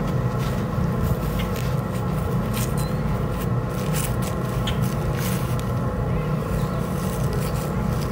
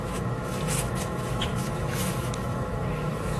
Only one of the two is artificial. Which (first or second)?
second